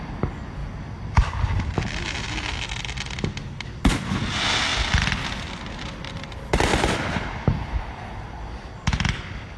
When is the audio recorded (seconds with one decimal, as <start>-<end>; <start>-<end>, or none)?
0.0-9.6